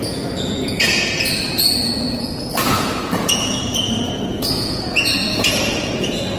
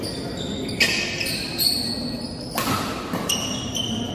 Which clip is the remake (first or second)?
first